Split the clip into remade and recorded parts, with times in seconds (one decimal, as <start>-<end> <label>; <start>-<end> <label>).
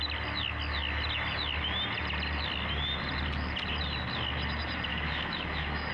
0.0-4.9 recorded; 4.9-5.9 remade